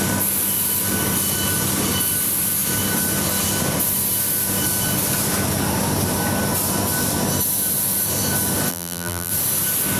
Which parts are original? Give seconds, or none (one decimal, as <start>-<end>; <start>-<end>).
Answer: 0.0-8.7; 9.3-10.0